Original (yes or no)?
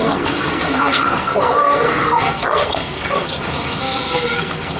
no